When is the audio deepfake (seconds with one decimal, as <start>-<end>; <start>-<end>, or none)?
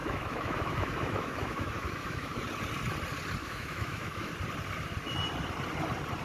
0.0-2.4; 3.4-4.3